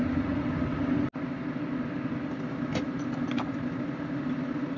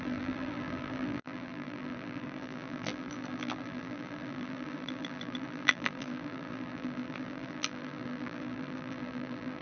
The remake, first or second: second